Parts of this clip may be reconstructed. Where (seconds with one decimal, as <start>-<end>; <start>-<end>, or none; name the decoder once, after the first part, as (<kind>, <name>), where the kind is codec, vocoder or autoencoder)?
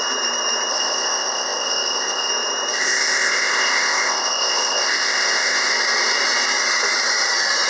0.7-2.3 (codec, ZipCodec); 2.7-5.7